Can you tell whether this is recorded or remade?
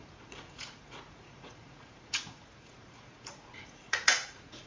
remade